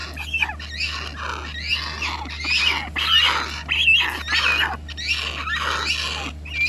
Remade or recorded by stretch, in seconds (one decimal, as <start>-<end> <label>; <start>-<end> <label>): 0.0-6.7 recorded